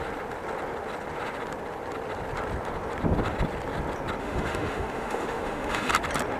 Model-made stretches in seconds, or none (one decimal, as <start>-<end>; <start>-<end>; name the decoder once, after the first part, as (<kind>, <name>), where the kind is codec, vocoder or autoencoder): 4.2-5.9 (autoencoder, DAC-VAE)